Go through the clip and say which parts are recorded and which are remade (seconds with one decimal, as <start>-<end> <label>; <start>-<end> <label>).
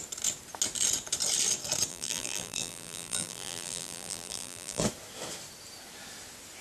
0.0-1.9 recorded; 1.9-4.8 remade; 4.8-6.6 recorded